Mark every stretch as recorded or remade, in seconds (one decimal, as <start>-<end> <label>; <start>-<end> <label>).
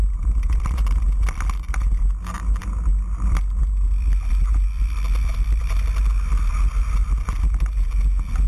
0.0-8.5 recorded